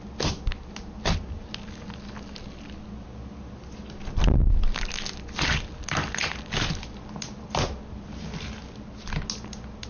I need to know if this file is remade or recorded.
recorded